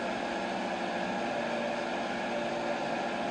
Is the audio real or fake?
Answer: real